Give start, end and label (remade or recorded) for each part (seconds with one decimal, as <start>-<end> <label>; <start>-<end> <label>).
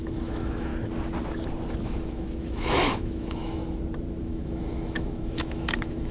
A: 0.0-0.7 remade; 0.7-1.8 recorded; 1.8-3.6 remade; 3.6-4.2 recorded; 4.2-6.1 remade